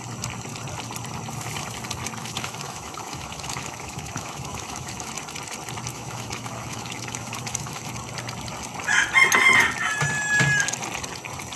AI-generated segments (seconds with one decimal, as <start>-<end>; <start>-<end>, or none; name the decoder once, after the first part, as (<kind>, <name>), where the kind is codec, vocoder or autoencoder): 2.2-5.1 (autoencoder, DAC-VAE); 5.9-7.9